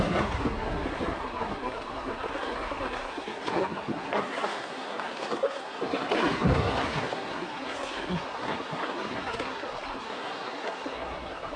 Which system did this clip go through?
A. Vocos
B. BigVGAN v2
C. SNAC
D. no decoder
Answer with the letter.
C